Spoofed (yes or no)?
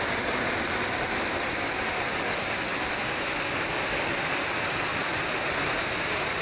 no